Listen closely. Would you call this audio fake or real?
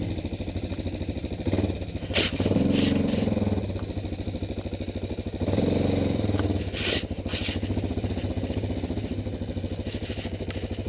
real